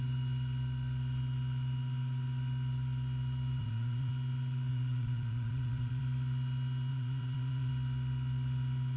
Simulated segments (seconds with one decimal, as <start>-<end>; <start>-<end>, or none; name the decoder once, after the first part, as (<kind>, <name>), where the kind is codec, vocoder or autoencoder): 3.6-4.1 (vocoder, Vocos); 4.7-6.0; 6.9-7.7